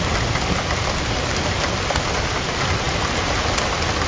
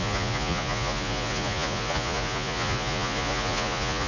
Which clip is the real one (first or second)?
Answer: first